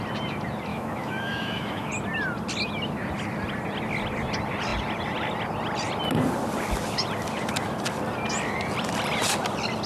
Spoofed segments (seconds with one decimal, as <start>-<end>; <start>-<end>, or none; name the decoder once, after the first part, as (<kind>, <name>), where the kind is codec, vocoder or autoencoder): 0.7-1.9 (autoencoder, DAC-VAE)